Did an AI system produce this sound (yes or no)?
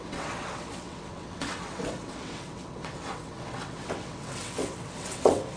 yes